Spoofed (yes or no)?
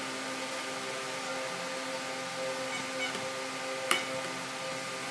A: no